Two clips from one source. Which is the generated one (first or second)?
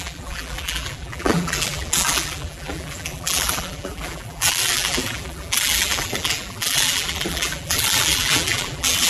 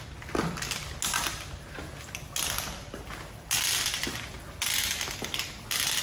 first